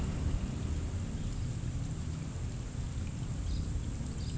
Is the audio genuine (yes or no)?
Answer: yes